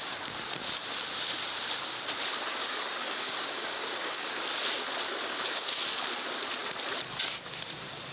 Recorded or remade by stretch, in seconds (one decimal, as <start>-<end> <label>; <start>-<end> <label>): 0.0-2.5 recorded; 2.5-4.4 remade; 4.4-5.2 recorded; 5.2-5.8 remade; 5.8-8.1 recorded